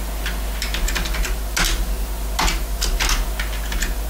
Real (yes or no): yes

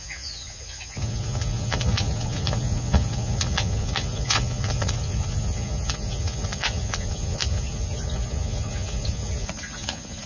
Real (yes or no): no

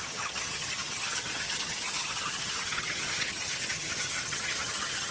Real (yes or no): no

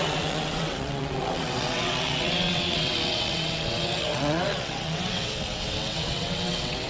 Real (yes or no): no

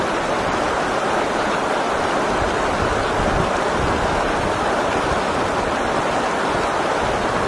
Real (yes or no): no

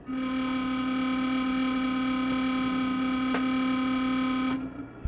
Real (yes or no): yes